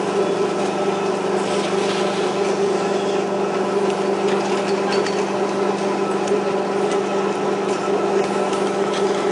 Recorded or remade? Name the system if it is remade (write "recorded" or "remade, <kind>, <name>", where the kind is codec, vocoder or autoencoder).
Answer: recorded